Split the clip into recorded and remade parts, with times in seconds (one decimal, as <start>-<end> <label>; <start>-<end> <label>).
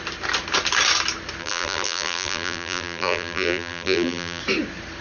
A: 0.0-1.4 recorded; 1.4-4.4 remade; 4.4-5.0 recorded